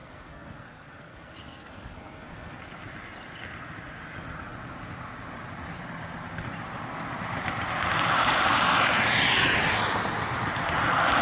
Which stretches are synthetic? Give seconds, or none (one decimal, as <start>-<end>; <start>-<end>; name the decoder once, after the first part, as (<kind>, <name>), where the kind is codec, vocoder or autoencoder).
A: 0.0-2.6 (codec, SNAC)